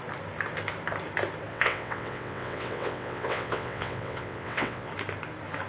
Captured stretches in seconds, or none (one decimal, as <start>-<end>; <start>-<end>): 0.0-1.5; 4.9-5.7